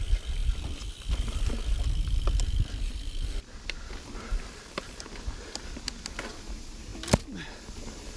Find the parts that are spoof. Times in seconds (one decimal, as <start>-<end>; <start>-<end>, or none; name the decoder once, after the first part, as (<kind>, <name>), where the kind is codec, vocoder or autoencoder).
none